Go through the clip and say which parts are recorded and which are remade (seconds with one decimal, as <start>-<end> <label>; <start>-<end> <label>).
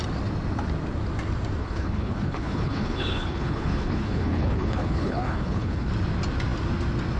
0.0-1.6 recorded; 1.6-5.9 remade; 5.9-7.2 recorded